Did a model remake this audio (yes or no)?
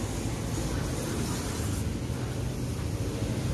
no